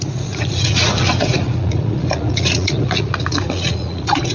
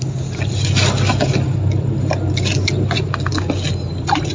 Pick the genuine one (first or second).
second